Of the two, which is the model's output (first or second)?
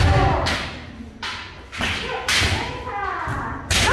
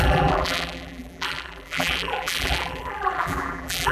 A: second